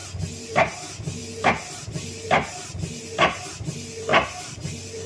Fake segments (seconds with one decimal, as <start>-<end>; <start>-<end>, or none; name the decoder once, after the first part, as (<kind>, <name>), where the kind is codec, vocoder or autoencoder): none